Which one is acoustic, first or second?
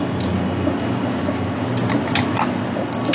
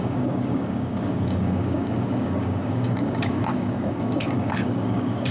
first